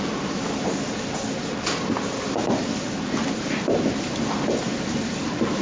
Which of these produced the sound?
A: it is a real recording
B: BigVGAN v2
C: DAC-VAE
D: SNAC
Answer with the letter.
A